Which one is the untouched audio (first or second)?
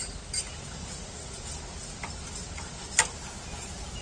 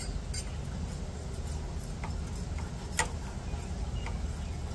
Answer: second